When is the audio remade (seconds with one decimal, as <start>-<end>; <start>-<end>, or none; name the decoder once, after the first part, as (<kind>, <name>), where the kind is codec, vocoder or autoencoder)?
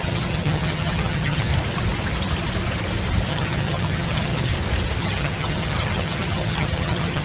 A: 0.0-1.5 (vocoder, HiFi-GAN); 3.3-4.5; 5.0-7.2